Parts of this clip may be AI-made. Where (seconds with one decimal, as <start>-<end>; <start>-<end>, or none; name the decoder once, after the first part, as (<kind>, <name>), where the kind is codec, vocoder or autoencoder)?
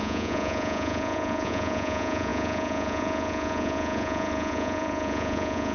0.0-5.7 (vocoder, Vocos)